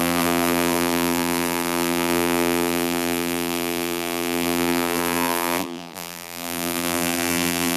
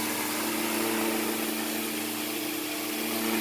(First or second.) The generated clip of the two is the first